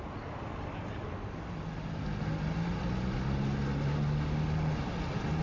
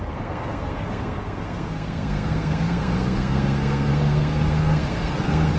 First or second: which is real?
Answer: first